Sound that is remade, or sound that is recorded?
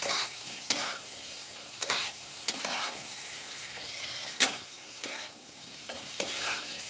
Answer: remade